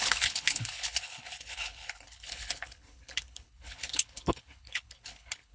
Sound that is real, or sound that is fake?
fake